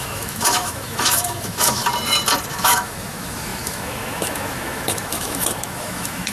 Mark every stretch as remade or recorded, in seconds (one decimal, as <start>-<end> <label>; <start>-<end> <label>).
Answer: 0.0-1.8 remade; 1.8-2.5 recorded; 2.5-6.3 remade